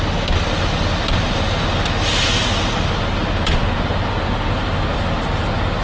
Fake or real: real